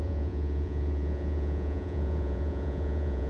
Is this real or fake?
fake